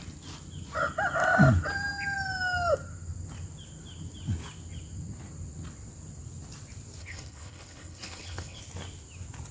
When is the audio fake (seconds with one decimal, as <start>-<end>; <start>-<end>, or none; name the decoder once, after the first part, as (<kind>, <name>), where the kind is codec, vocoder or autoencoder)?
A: 7.0-8.6 (codec, HILCodec)